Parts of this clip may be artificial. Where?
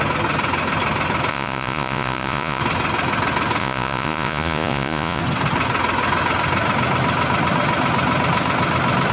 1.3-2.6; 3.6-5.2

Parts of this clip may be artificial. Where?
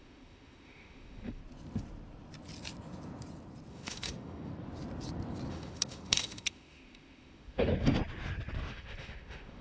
0.0-1.4; 3.7-4.5; 5.5-7.7; 8.7-9.6